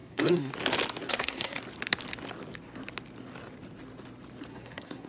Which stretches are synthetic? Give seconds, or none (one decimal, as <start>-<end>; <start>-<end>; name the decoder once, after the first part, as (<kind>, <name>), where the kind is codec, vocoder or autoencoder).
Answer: 0.0-0.5 (codec, SNAC); 1.1-1.6; 4.5-5.1